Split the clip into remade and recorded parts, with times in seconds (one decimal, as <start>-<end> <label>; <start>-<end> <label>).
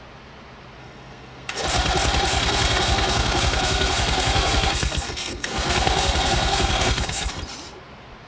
0.0-0.8 recorded; 0.8-1.6 remade; 1.6-2.3 recorded; 2.3-7.3 remade; 7.3-8.3 recorded